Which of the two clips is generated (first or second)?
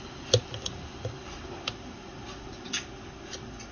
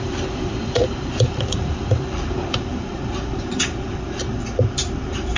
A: second